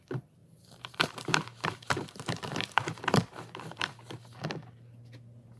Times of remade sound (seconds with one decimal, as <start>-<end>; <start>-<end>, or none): 0.4-3.8